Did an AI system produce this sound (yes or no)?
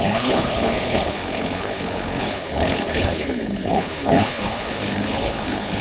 yes